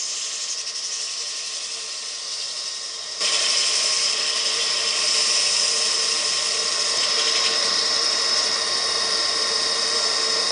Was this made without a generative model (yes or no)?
no